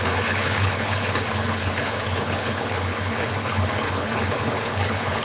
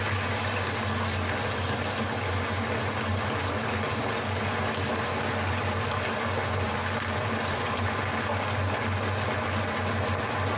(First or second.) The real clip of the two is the second